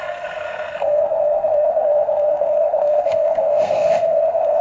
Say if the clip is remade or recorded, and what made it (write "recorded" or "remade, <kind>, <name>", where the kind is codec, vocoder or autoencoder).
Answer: remade, codec, SNAC